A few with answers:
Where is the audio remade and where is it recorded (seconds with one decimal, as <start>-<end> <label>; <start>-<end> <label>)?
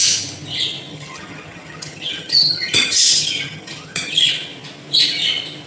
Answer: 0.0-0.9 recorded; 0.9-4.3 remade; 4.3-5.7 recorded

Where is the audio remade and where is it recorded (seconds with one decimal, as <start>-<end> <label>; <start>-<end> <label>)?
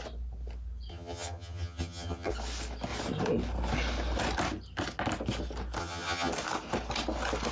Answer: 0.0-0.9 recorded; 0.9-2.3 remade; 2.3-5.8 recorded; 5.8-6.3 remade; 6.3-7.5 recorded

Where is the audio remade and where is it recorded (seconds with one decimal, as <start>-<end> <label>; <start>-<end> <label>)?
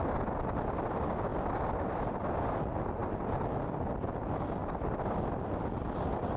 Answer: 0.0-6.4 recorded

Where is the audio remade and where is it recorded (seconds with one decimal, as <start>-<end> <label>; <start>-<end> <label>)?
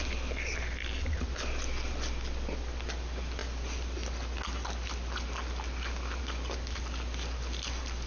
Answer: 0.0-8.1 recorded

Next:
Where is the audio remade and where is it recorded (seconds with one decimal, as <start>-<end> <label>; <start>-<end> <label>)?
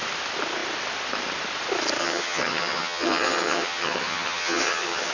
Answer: 0.0-2.0 recorded; 2.0-5.1 remade